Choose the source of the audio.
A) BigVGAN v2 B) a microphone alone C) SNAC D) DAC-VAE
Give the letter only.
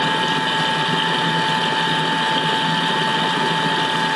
B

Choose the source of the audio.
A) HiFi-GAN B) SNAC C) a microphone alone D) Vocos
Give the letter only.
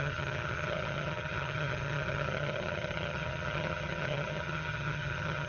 A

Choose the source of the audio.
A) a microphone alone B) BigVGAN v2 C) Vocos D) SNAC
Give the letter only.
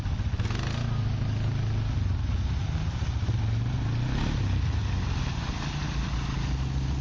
A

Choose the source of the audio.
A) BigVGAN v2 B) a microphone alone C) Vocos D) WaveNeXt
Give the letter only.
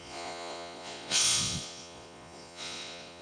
C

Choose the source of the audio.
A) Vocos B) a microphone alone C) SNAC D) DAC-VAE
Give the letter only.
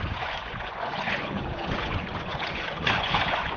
A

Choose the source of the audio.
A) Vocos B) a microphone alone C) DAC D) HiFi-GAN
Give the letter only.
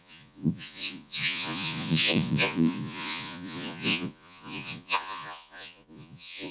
A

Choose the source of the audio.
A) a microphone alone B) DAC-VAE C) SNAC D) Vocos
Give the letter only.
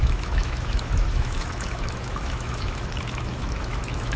B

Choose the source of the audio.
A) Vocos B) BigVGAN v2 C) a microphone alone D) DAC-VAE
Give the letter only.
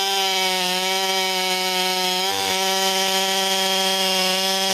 D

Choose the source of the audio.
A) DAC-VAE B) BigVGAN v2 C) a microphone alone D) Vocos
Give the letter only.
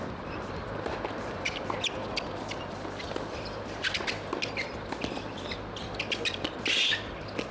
C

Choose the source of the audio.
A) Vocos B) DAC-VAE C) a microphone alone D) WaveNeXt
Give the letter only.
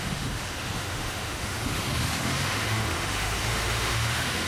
B